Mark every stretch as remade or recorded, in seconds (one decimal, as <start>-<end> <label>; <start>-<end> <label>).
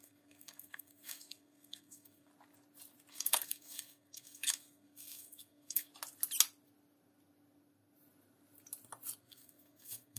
0.0-2.3 remade; 2.3-3.1 recorded; 3.1-5.9 remade; 5.9-9.2 recorded; 9.2-10.2 remade